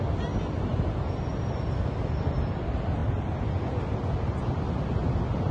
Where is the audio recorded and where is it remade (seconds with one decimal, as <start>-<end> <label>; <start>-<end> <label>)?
0.0-5.5 recorded